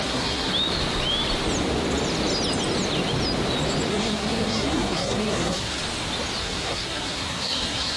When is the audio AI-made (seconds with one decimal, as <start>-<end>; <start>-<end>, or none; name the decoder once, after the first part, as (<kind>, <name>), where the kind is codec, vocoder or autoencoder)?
0.0-0.5 (codec, SNAC); 3.9-5.8; 6.4-8.0